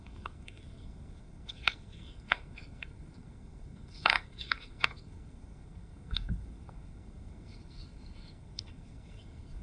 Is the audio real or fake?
fake